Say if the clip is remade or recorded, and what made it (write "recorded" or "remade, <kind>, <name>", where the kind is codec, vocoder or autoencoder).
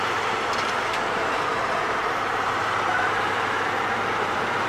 remade, vocoder, BigVGAN v2